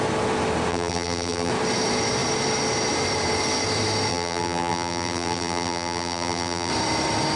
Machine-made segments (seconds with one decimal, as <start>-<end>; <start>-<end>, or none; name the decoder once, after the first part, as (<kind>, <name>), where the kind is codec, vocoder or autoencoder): 0.7-1.5 (vocoder, BigVGAN v2); 4.1-6.7